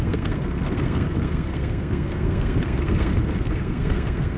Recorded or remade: remade